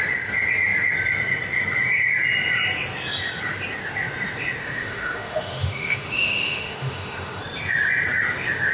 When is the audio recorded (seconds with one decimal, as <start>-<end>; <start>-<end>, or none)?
0.0-4.6; 7.4-8.7